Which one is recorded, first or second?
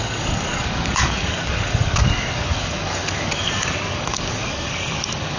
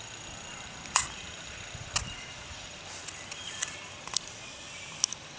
second